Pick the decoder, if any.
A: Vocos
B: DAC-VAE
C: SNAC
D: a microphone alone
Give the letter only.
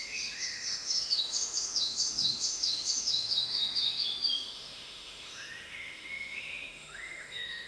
B